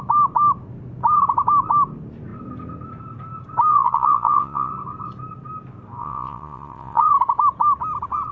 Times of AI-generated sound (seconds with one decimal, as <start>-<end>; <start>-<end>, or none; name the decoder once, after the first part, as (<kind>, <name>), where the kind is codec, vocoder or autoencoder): 3.7-4.7 (vocoder, Vocos); 6.0-7.1